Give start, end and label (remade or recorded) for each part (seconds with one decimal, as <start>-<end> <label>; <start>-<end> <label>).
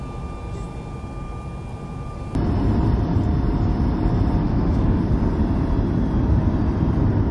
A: 0.0-4.4 recorded; 4.4-5.0 remade; 5.0-7.3 recorded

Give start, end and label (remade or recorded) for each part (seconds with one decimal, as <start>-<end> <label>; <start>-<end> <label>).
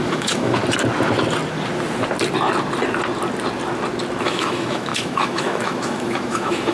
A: 0.0-0.6 remade; 0.6-4.2 recorded; 4.2-6.7 remade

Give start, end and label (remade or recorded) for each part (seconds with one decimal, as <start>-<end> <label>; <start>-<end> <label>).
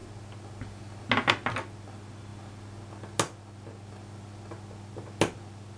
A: 0.0-5.8 recorded